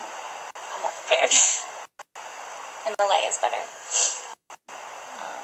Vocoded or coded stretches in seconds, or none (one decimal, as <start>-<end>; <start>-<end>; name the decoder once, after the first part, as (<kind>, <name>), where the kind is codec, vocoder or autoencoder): 0.7-1.7 (codec, SNAC); 3.6-4.5